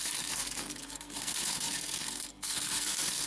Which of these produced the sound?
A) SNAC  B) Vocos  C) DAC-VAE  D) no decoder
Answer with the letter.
A